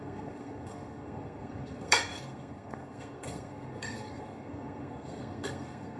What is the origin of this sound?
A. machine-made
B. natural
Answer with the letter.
A